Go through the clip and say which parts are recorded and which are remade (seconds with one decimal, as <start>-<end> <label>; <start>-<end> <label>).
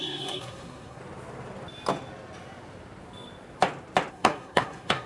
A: 0.0-1.0 remade; 1.0-4.1 recorded; 4.1-5.1 remade